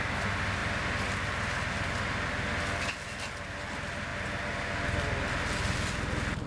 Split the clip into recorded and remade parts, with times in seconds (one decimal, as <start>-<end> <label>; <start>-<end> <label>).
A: 0.0-6.5 recorded